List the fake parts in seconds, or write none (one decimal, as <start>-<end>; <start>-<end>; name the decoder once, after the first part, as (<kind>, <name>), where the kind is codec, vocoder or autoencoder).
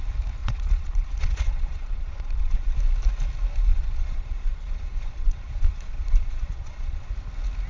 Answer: 0.4-2.7 (vocoder, Vocos); 3.7-7.0